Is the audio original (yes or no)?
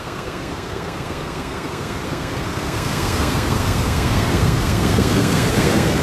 no